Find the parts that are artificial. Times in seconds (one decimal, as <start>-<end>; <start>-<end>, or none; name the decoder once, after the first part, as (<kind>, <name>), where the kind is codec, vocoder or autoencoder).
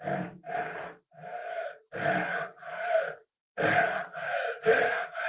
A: 1.4-1.9 (autoencoder, DAC-VAE); 4.3-5.3